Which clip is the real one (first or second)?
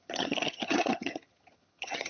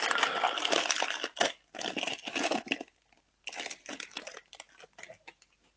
second